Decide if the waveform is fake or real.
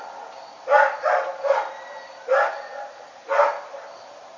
real